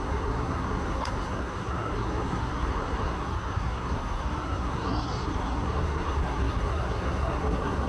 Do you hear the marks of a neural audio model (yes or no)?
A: yes